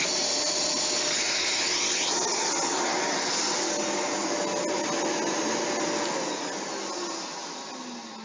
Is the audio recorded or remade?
recorded